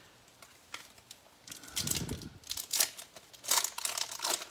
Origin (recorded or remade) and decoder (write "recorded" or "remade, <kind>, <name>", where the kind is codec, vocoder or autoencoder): recorded